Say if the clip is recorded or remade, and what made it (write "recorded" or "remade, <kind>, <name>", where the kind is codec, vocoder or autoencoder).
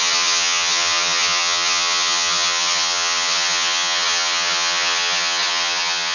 remade, vocoder, HiFi-GAN